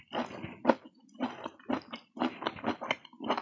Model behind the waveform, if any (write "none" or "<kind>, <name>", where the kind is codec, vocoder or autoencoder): none